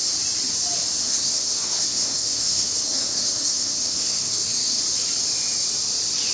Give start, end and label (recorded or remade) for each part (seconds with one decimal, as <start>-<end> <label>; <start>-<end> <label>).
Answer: 0.0-1.0 recorded; 1.0-4.8 remade; 4.8-6.3 recorded

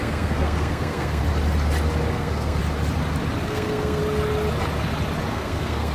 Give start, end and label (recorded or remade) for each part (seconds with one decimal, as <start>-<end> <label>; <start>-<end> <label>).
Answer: 0.0-1.2 remade; 1.2-2.1 recorded; 2.1-2.6 remade; 2.6-3.4 recorded; 3.4-4.0 remade; 4.0-5.3 recorded; 5.3-5.9 remade

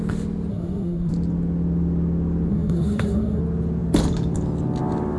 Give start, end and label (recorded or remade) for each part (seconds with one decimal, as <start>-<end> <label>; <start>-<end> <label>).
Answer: 0.0-0.5 recorded; 0.5-1.1 remade; 1.1-2.5 recorded; 2.5-3.4 remade; 3.4-5.2 recorded

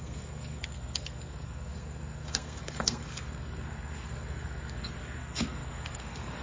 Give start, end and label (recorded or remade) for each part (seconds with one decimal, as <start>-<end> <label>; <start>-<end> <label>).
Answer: 0.0-6.4 remade

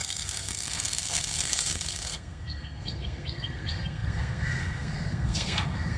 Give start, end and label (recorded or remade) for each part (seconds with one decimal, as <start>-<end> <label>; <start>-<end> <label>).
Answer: 0.0-6.0 remade

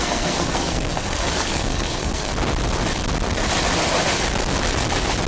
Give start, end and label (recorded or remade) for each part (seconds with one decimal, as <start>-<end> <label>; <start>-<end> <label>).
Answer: 0.0-2.3 remade; 2.3-5.3 recorded

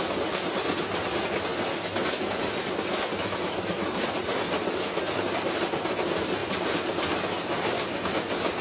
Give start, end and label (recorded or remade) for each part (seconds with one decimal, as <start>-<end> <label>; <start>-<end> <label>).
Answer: 0.0-8.6 recorded

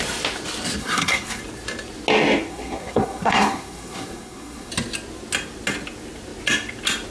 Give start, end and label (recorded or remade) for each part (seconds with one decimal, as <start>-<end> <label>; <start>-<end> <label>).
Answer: 0.0-0.8 recorded; 0.8-1.4 remade; 1.4-2.5 recorded; 2.5-4.7 remade; 4.7-7.1 recorded